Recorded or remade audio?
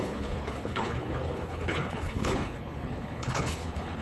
remade